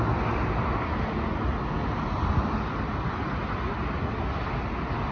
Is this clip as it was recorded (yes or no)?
yes